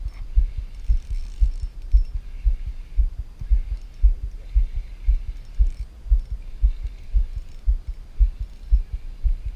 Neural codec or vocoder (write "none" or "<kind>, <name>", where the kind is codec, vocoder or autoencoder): none